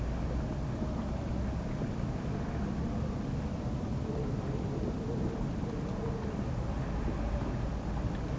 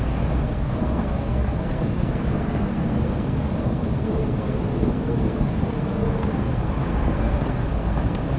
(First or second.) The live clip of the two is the first